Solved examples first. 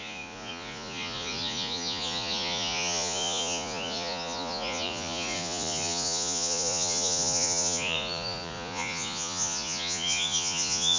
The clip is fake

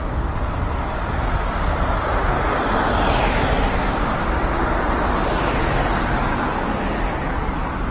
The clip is real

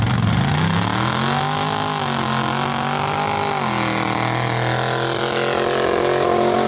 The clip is real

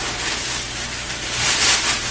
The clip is real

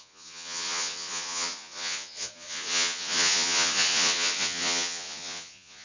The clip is fake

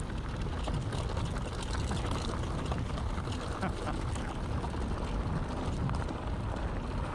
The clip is real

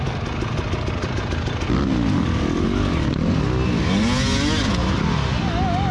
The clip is real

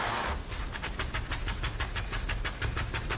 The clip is real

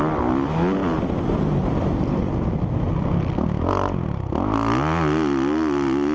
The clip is real